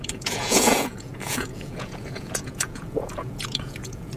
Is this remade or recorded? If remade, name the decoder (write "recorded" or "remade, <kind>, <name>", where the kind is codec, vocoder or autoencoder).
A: remade, vocoder, Vocos